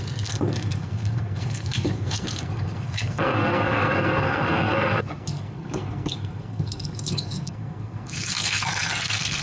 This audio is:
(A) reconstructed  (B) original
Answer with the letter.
A